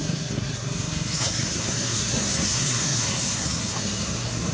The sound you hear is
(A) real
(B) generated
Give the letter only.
B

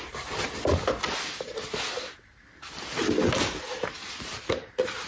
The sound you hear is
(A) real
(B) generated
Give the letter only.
A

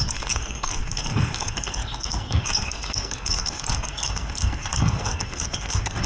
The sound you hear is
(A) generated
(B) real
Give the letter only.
A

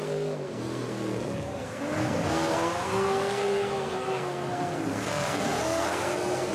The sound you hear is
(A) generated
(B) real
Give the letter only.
A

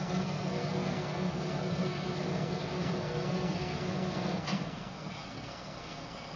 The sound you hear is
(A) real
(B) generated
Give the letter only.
B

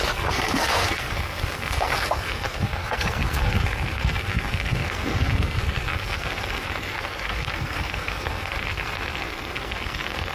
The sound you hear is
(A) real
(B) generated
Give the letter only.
B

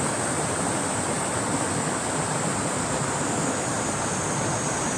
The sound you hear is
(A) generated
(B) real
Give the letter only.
B